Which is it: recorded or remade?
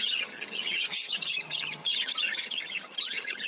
remade